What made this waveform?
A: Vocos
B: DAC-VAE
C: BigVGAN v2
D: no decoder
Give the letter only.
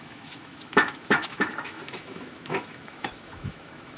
B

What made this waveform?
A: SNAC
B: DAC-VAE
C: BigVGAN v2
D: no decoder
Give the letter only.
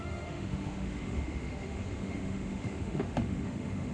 B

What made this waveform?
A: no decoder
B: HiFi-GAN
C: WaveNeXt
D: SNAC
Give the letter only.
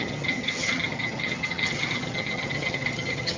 B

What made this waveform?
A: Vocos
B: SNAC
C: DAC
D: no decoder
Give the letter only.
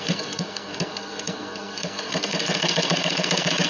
B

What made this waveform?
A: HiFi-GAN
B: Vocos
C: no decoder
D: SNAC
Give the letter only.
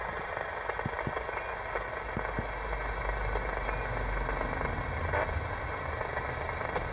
C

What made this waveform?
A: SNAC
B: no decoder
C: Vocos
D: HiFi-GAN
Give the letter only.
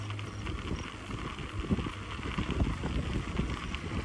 B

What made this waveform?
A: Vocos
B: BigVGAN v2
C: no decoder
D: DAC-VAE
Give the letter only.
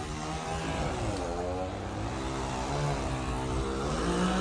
C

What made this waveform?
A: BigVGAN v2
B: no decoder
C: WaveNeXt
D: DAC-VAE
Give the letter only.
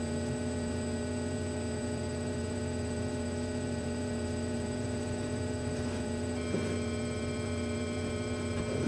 A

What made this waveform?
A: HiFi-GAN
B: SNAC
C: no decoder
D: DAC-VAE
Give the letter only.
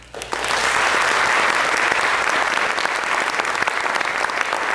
C